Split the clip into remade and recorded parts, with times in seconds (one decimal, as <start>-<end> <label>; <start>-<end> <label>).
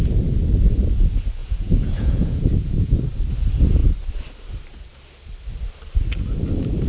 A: 0.0-1.4 recorded; 1.4-3.0 remade; 3.0-6.9 recorded